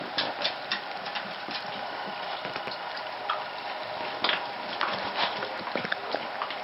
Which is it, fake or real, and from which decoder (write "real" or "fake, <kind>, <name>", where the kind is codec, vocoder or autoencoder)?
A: real